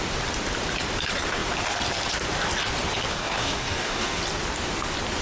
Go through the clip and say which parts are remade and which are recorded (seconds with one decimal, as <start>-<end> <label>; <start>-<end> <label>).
0.0-3.1 recorded; 3.1-4.2 remade; 4.2-5.2 recorded